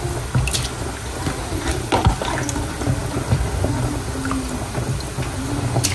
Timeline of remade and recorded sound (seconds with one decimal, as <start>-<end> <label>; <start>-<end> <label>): 0.0-5.9 recorded